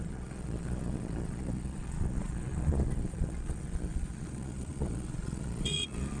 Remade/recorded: remade